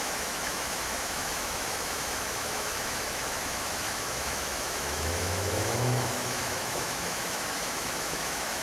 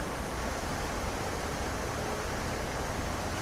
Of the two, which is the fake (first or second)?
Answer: first